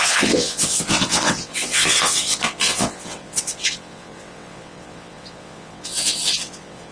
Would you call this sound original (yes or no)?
no